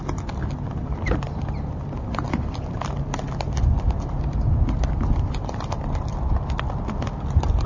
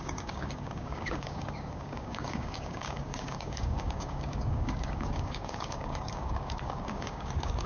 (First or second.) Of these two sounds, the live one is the first